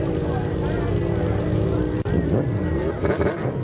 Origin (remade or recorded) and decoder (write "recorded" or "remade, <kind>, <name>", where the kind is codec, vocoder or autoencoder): recorded